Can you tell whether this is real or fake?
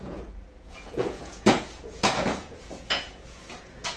fake